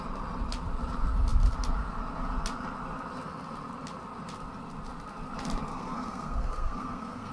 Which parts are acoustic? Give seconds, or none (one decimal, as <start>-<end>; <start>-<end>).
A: 0.0-5.7